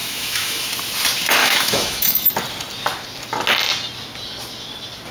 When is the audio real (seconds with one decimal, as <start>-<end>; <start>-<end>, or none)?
0.7-1.4; 2.3-5.1